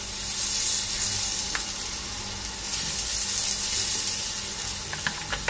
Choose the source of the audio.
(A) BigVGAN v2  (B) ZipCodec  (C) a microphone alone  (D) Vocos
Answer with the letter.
C